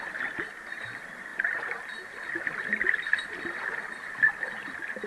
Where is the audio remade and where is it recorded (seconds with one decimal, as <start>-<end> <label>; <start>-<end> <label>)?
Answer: 0.0-5.1 recorded